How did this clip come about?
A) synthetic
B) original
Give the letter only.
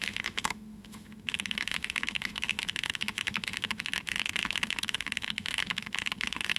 A